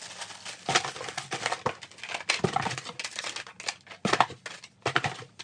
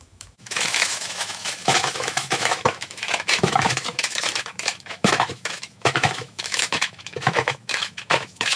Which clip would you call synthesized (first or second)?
second